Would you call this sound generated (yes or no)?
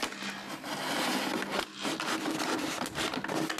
no